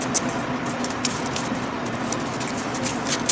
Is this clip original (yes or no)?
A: yes